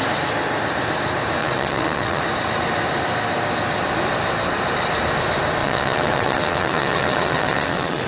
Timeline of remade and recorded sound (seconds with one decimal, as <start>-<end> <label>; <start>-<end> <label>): 0.0-1.4 recorded; 1.4-2.2 remade; 2.2-5.6 recorded; 5.6-8.1 remade